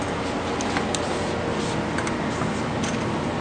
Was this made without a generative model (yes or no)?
yes